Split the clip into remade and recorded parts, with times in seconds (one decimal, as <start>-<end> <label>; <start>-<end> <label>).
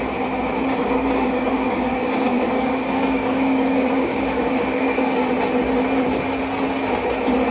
0.0-0.8 recorded; 0.8-5.3 remade; 5.3-7.5 recorded